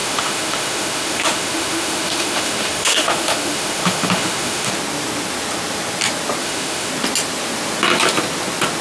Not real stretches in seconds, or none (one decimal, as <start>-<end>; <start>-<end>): 0.0-4.7; 6.4-6.9